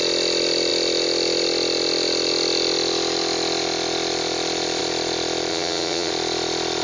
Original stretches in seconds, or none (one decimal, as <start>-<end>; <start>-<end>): 0.0-5.5; 6.1-6.8